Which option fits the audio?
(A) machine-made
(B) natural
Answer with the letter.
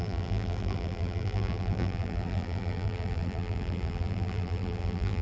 A